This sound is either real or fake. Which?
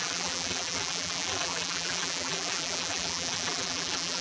fake